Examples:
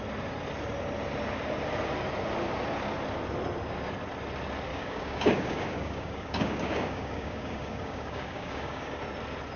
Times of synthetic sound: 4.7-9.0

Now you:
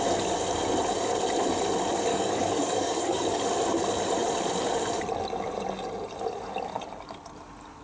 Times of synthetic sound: 2.1-3.4

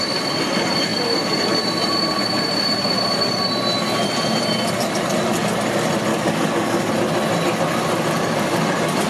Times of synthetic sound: 6.1-6.9